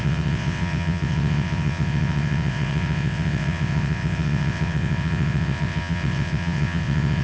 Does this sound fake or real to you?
fake